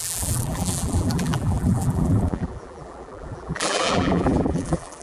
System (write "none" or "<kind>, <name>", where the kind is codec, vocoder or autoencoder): vocoder, BigVGAN v2